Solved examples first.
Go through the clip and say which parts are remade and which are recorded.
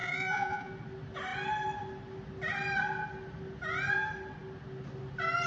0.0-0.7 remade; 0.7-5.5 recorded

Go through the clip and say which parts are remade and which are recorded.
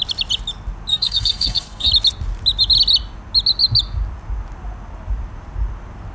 0.0-0.9 recorded; 0.9-1.9 remade; 1.9-6.1 recorded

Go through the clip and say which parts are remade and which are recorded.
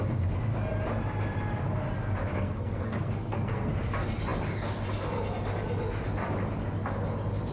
0.0-2.3 recorded; 2.3-3.7 remade; 3.7-7.5 recorded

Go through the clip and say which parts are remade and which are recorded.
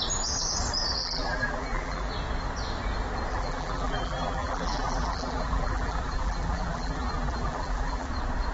0.0-1.0 recorded; 1.0-2.1 remade; 2.1-3.3 recorded; 3.3-8.1 remade; 8.1-8.5 recorded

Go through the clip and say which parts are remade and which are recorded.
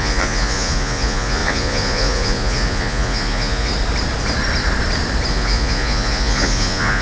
0.0-3.7 remade; 3.7-5.3 recorded; 5.3-7.0 remade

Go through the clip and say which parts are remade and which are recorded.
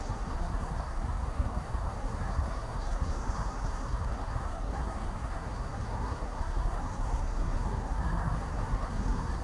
0.0-9.4 remade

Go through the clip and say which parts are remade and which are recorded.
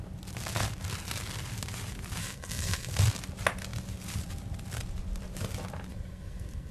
0.0-2.2 recorded; 2.2-2.9 remade; 2.9-5.9 recorded; 5.9-6.7 remade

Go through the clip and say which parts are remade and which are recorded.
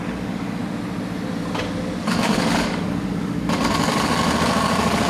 0.0-0.6 remade; 0.6-2.0 recorded; 2.0-5.1 remade